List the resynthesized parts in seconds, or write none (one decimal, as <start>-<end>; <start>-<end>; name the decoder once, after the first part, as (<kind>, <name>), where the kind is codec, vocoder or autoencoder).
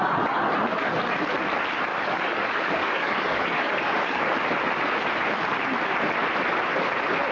1.9-4.2 (codec, DAC)